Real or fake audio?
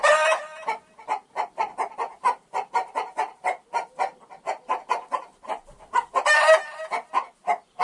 real